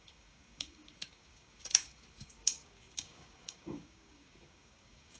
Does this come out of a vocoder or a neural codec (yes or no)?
yes